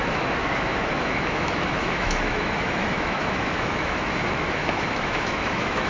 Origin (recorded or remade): remade